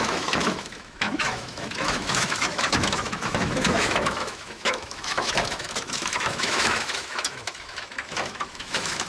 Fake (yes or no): yes